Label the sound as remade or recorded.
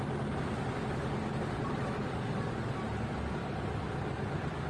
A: recorded